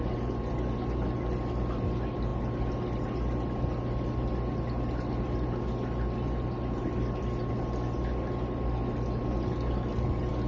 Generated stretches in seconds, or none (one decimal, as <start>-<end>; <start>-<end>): none